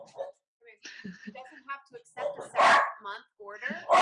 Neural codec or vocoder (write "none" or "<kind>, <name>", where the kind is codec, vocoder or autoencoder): none